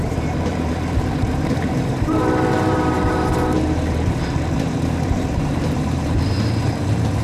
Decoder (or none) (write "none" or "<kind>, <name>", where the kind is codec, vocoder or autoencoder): vocoder, BigVGAN v2